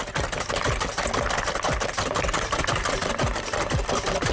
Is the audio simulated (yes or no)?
no